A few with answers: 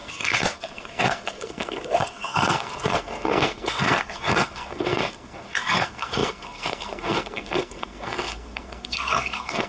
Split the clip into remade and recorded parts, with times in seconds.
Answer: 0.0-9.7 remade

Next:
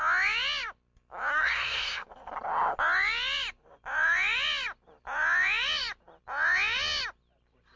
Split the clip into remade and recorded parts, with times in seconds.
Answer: 0.0-1.3 recorded; 1.3-2.1 remade; 2.1-7.8 recorded